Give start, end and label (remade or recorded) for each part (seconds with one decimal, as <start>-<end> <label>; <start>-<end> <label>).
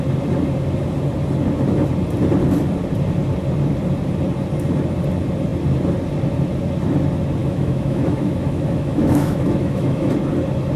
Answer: 0.0-7.4 recorded; 7.4-10.1 remade; 10.1-10.8 recorded